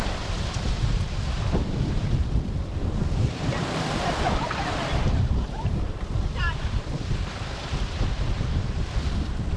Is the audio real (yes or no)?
no